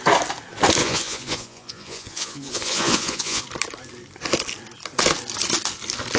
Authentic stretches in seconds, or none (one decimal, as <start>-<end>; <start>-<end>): 0.0-0.8; 3.4-6.2